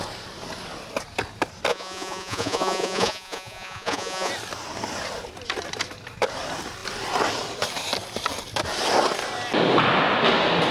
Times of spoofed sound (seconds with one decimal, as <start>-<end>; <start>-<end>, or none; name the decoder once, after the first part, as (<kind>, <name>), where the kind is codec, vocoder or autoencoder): 1.7-4.3 (vocoder, Vocos)